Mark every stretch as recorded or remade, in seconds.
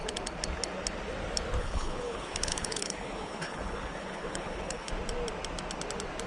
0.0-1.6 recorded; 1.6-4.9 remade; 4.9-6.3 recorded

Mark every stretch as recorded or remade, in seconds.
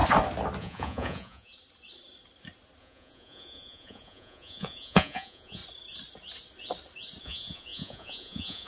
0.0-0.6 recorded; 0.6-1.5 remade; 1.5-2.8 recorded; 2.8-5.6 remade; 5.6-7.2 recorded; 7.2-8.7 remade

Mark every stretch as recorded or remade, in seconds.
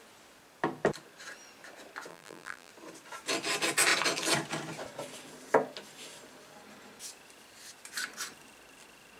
0.0-2.1 recorded; 2.1-2.7 remade; 2.7-9.2 recorded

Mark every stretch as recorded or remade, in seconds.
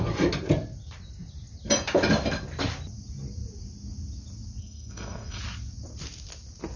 0.0-4.6 recorded; 4.6-5.4 remade; 5.4-6.8 recorded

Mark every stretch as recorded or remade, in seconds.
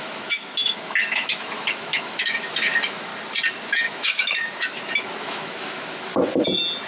0.0-3.1 remade; 3.1-3.7 recorded; 3.7-6.1 remade; 6.1-6.9 recorded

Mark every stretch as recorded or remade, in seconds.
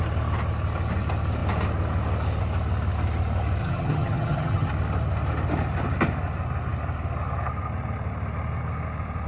0.0-3.6 recorded; 3.6-4.7 remade; 4.7-9.3 recorded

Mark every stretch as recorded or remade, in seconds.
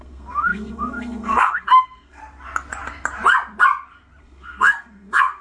0.0-2.2 remade; 2.2-4.2 recorded; 4.2-5.4 remade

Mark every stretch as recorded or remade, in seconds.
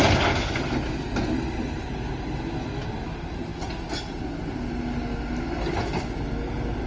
0.0-6.9 recorded